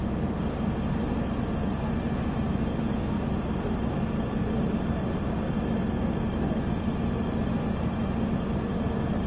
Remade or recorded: recorded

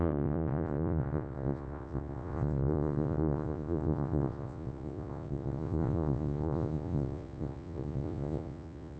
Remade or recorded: remade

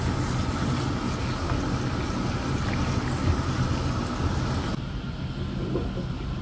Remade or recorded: recorded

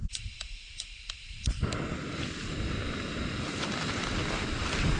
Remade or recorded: recorded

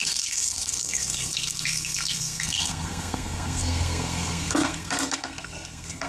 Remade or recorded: remade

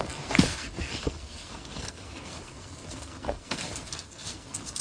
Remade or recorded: remade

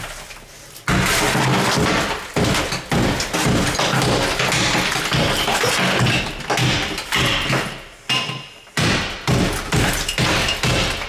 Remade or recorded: recorded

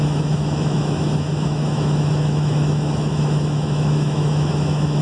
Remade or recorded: remade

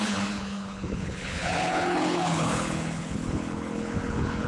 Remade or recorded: remade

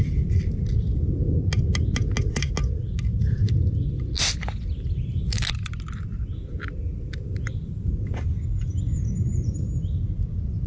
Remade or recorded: recorded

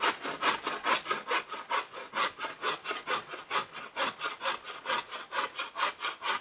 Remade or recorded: recorded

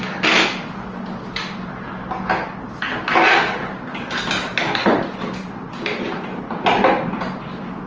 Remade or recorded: recorded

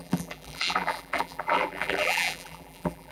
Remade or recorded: remade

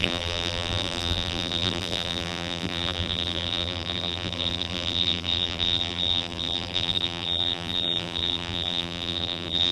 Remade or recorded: remade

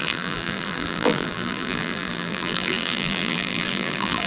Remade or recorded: remade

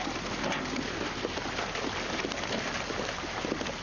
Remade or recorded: recorded